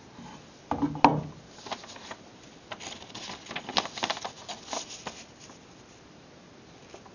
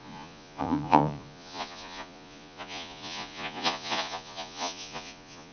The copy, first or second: second